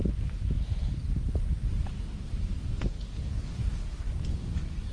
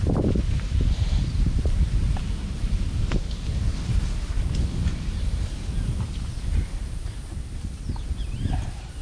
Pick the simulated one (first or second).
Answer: second